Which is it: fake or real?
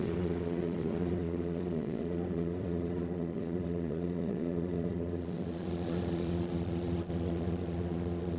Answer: fake